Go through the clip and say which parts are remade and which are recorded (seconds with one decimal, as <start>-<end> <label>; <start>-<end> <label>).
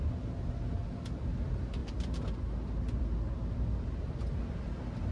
0.0-5.1 recorded